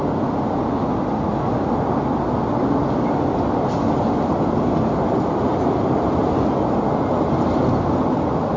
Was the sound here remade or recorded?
recorded